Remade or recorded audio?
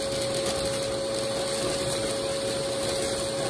recorded